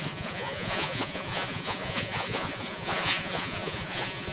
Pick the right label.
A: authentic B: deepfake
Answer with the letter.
B